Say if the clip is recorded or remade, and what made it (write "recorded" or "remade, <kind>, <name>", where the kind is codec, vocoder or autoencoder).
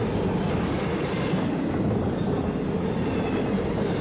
recorded